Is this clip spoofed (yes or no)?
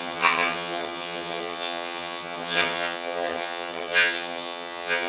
yes